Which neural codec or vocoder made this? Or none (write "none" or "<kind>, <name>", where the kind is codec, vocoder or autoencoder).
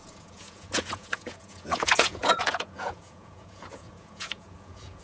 vocoder, Vocos